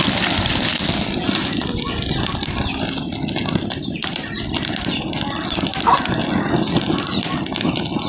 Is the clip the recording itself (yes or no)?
yes